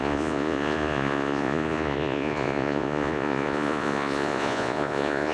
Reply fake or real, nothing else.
fake